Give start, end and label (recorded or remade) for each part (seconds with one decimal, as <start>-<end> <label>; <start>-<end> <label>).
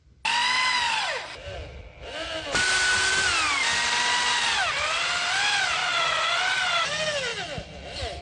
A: 0.0-5.8 recorded; 5.8-6.4 remade; 6.4-8.2 recorded